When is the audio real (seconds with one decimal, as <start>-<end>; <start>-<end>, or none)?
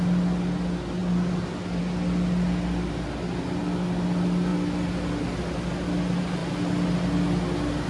0.0-7.9